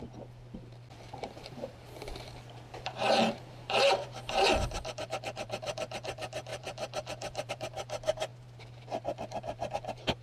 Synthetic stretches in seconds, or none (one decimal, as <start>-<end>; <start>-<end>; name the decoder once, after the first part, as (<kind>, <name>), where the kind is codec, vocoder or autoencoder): 0.0-2.1 (vocoder, BigVGAN v2); 2.7-10.2